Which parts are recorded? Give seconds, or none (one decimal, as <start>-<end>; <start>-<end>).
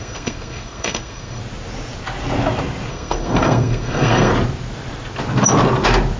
1.4-2.9; 4.3-6.2